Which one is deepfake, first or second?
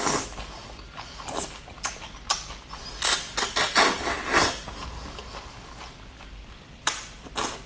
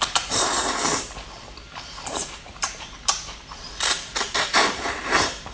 second